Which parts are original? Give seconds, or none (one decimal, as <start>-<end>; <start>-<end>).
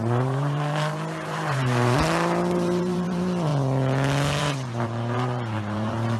3.5-4.4